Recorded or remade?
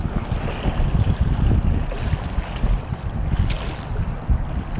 recorded